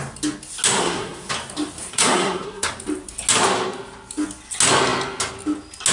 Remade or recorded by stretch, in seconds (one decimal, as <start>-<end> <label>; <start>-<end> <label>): 0.0-0.8 recorded; 0.8-1.3 remade; 1.3-1.9 recorded; 1.9-2.7 remade; 2.7-5.9 recorded